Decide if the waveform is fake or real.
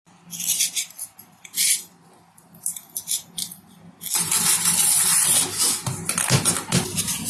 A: real